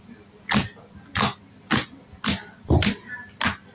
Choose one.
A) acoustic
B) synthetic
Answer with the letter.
A